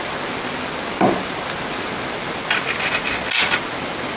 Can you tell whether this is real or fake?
real